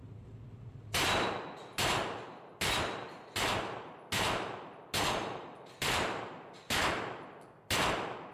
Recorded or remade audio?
recorded